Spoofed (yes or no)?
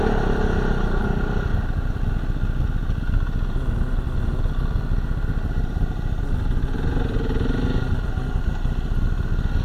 no